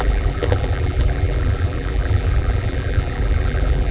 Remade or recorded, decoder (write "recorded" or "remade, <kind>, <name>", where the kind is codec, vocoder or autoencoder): remade, vocoder, BigVGAN v2